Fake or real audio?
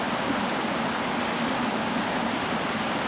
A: real